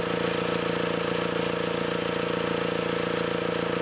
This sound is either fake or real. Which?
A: real